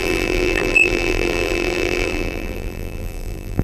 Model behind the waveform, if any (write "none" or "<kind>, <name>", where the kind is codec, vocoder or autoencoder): vocoder, BigVGAN v2